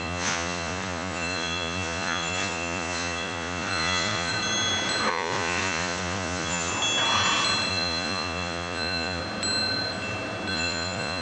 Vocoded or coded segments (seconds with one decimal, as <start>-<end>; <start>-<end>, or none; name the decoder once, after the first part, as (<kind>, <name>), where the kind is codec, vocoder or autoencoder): 0.0-4.3 (vocoder, Vocos); 5.1-6.7; 7.7-9.2; 10.5-11.2